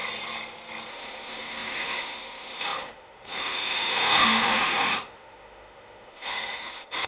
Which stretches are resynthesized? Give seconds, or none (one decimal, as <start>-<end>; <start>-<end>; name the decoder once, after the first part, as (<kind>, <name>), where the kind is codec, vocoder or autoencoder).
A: 0.9-7.1 (autoencoder, DAC-VAE)